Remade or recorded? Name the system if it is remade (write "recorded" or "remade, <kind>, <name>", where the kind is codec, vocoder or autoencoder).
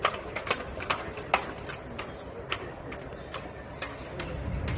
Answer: recorded